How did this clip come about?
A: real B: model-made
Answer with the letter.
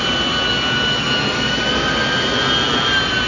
A